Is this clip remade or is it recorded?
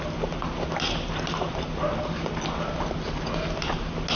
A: recorded